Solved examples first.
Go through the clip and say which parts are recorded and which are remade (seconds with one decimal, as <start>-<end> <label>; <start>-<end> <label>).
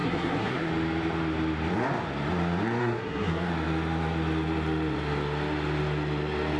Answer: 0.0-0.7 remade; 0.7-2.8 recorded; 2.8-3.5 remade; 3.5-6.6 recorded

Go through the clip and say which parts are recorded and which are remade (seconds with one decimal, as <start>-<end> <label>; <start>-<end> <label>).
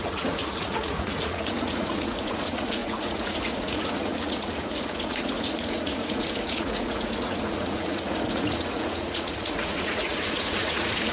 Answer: 0.0-11.1 remade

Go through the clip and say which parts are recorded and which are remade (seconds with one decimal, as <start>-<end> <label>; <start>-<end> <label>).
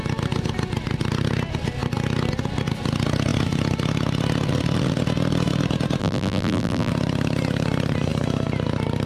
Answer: 0.0-6.0 recorded; 6.0-6.9 remade; 6.9-9.1 recorded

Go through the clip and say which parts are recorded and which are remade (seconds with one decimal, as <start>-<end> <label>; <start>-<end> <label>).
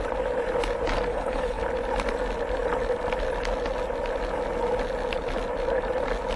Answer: 0.0-1.1 recorded; 1.1-1.6 remade; 1.6-6.4 recorded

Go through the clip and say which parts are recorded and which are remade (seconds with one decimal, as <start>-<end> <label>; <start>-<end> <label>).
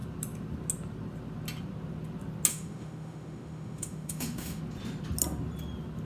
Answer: 0.0-2.5 recorded; 2.5-4.6 remade; 4.6-6.1 recorded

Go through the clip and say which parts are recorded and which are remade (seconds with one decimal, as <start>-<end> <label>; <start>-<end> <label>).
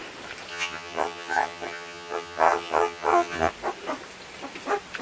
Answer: 0.0-0.5 recorded; 0.5-3.5 remade; 3.5-5.0 recorded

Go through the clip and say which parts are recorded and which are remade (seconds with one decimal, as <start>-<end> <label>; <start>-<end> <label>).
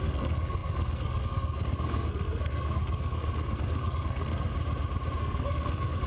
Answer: 0.0-4.5 remade; 4.5-5.2 recorded; 5.2-6.1 remade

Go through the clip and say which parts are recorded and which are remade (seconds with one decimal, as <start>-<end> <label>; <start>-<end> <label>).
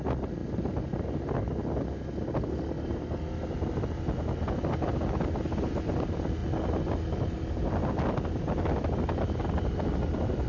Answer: 0.0-10.5 recorded